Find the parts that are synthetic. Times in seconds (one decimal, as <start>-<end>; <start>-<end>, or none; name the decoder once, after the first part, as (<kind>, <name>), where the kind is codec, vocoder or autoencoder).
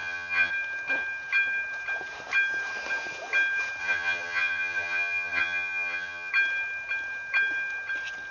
0.0-0.5 (vocoder, HiFi-GAN); 3.8-6.3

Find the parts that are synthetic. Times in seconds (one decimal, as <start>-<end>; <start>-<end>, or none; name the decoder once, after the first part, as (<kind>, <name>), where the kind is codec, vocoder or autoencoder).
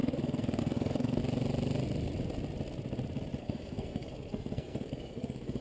0.0-1.2 (codec, SNAC); 3.4-5.6